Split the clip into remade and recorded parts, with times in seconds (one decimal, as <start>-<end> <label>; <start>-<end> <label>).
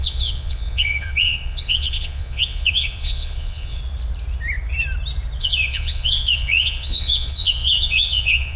0.0-3.8 remade; 3.8-5.4 recorded; 5.4-8.6 remade